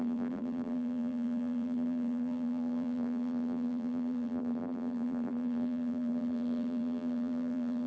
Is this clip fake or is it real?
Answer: fake